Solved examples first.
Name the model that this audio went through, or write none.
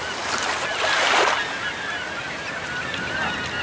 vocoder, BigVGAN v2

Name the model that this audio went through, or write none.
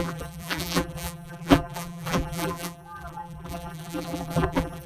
vocoder, BigVGAN v2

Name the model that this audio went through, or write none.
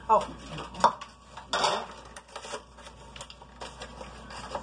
none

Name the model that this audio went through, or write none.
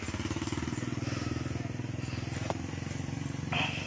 none